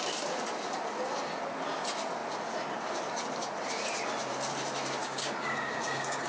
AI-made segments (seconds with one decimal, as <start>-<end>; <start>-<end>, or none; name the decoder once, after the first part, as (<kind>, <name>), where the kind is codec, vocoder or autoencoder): 5.0-6.3 (codec, DAC)